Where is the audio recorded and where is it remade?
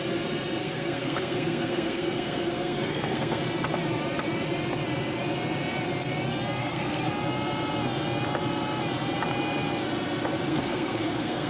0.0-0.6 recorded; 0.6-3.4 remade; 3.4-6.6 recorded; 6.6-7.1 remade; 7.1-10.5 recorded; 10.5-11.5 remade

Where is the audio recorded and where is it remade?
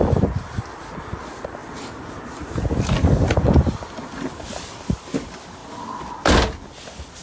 0.0-7.2 recorded